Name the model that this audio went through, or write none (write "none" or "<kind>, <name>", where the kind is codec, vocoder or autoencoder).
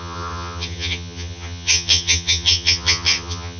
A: vocoder, HiFi-GAN